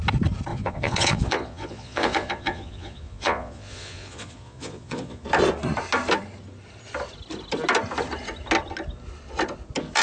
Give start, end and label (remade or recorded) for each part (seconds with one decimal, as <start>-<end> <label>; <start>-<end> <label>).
0.0-0.5 recorded; 0.5-5.2 remade; 5.2-10.0 recorded